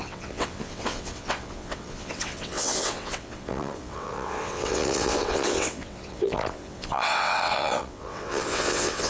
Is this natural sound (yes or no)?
no